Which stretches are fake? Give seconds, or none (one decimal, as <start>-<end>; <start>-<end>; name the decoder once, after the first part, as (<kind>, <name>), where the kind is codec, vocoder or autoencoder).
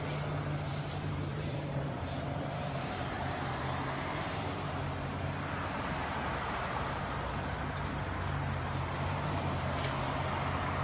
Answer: 0.7-4.8 (vocoder, BigVGAN v2); 6.3-7.0